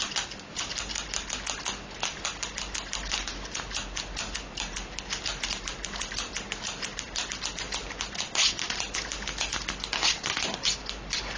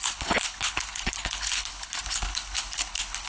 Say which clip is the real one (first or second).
first